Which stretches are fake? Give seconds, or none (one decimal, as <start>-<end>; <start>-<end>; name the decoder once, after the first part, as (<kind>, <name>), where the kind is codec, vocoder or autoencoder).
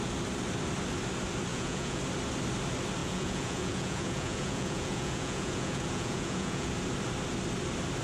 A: 1.5-2.0 (vocoder, Vocos); 3.0-6.7